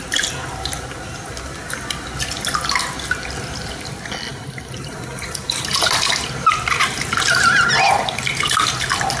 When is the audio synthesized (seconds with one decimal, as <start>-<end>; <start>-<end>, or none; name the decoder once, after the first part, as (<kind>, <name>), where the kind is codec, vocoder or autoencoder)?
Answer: none